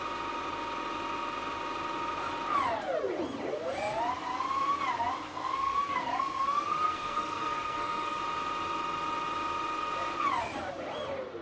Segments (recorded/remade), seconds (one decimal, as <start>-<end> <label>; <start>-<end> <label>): 0.0-5.3 recorded; 5.3-8.2 remade; 8.2-11.4 recorded